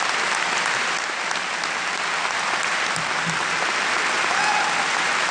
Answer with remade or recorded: recorded